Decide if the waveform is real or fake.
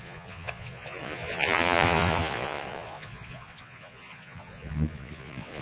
fake